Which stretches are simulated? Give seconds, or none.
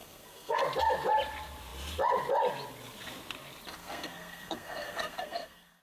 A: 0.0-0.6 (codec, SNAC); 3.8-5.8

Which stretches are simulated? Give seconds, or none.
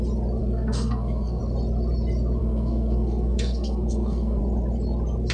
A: 0.4-1.4 (codec, SNAC); 2.4-4.4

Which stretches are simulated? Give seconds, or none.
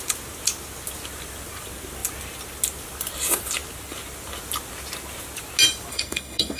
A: 5.9-6.6 (codec, SNAC)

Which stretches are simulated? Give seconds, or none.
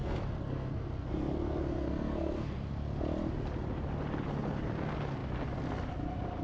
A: 0.0-2.7 (codec, SNAC)